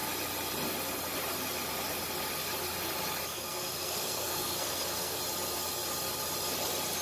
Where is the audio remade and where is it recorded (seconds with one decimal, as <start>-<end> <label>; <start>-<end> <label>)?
0.0-3.3 recorded; 3.3-5.2 remade; 5.2-7.0 recorded